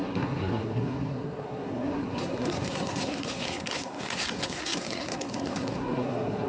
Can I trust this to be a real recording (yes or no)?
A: no